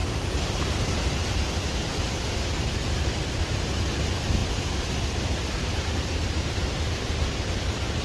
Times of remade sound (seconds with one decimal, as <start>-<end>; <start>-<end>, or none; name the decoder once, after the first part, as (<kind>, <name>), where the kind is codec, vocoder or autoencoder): 0.0-1.2 (vocoder, BigVGAN v2)